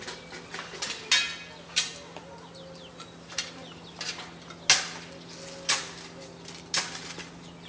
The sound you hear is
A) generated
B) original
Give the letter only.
B